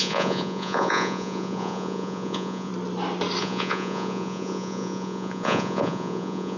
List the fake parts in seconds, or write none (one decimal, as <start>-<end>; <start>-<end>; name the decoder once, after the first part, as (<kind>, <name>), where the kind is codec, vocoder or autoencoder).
0.0-2.7 (vocoder, Vocos); 3.4-6.6